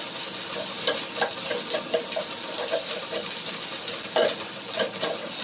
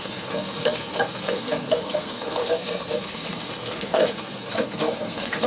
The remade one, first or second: second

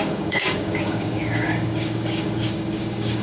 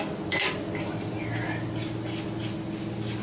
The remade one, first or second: first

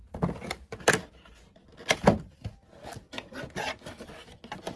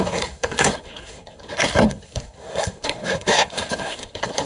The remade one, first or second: second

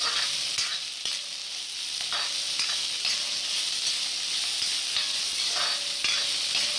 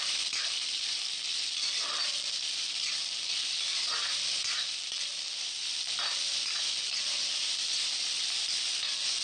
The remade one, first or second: second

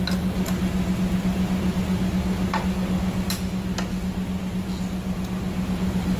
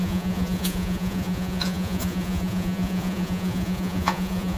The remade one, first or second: second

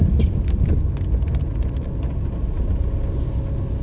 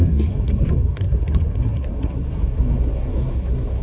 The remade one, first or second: second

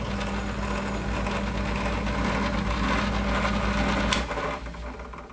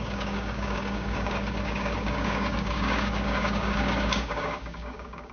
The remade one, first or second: second